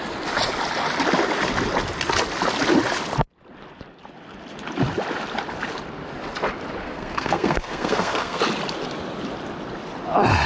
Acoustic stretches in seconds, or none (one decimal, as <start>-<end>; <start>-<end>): 0.0-6.8; 8.4-10.5